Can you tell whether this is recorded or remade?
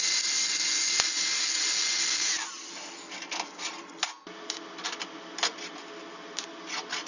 recorded